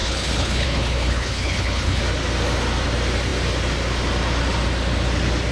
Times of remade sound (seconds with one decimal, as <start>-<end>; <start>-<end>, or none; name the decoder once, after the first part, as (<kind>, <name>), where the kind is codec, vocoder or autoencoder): 0.0-2.0 (codec, HILCodec)